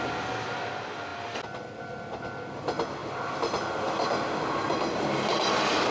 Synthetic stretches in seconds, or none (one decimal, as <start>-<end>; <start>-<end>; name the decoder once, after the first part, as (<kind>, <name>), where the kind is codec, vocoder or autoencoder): none